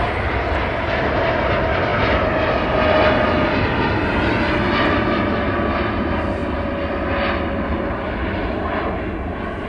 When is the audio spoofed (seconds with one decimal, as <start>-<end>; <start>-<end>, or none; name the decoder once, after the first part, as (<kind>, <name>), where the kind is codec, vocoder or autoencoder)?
none